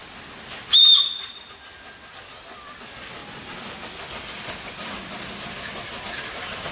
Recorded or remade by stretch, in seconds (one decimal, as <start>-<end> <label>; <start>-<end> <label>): 0.0-6.7 recorded

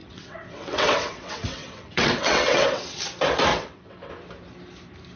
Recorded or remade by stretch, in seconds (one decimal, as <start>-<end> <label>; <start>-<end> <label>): 0.0-3.0 remade; 3.0-3.5 recorded; 3.5-4.1 remade; 4.1-5.2 recorded

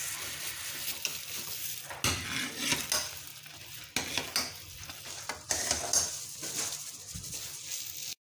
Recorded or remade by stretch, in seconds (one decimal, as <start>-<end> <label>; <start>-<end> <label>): 0.0-8.3 recorded